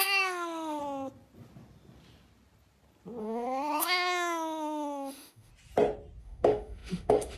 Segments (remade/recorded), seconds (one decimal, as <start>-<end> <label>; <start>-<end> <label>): 0.0-0.8 remade; 0.8-3.2 recorded; 3.2-5.5 remade; 5.5-6.2 recorded; 6.2-7.4 remade